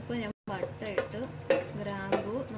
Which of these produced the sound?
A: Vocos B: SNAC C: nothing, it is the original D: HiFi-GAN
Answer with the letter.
C